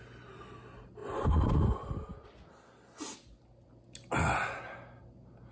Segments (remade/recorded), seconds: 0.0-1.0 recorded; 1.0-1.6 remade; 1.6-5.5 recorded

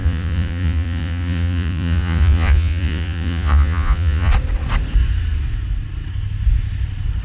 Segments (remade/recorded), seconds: 0.0-4.3 remade; 4.3-7.2 recorded

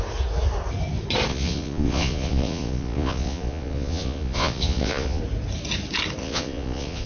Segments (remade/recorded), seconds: 0.0-1.3 recorded; 1.3-5.2 remade; 5.2-6.2 recorded; 6.2-7.1 remade

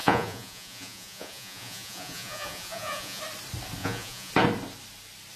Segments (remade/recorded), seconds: 0.0-3.2 remade; 3.2-3.8 recorded; 3.8-4.3 remade; 4.3-5.4 recorded

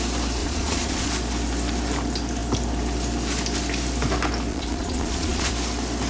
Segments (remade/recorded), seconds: 0.0-0.4 recorded; 0.4-1.1 remade; 1.1-4.5 recorded; 4.5-5.5 remade; 5.5-6.1 recorded

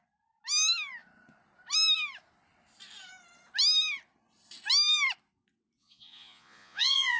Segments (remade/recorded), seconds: 0.0-5.8 recorded; 5.8-7.2 remade